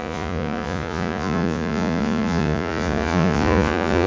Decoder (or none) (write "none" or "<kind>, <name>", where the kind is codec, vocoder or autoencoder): vocoder, Vocos